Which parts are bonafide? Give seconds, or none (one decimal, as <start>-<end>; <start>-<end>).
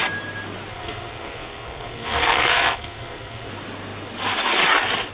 0.0-0.7; 3.5-5.1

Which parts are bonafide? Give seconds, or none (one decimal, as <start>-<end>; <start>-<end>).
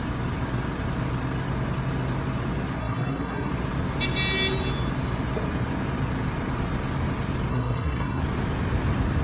0.0-2.8; 3.5-7.5; 8.2-9.2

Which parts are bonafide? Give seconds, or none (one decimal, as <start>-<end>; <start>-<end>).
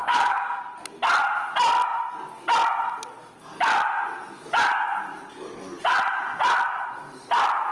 0.6-7.7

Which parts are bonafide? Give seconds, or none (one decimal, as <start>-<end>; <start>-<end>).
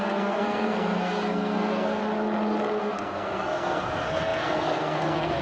2.0-2.8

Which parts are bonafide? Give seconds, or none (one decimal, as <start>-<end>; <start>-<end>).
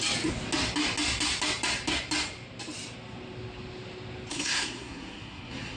0.0-4.3